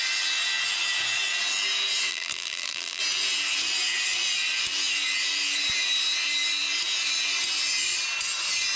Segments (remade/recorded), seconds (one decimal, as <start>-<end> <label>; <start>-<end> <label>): 0.0-2.1 recorded; 2.1-3.0 remade; 3.0-8.8 recorded